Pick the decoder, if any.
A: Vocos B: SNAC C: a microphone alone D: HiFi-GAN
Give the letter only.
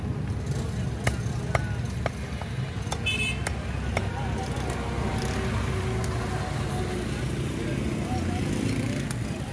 C